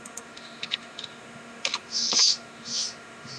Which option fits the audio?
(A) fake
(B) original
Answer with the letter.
A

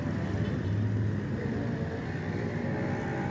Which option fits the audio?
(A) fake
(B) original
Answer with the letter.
B